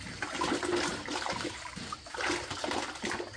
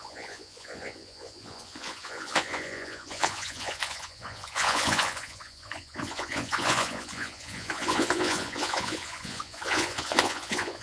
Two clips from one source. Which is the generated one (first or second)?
second